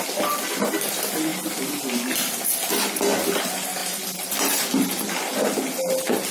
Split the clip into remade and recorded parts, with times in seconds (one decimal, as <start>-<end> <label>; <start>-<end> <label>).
0.0-6.3 recorded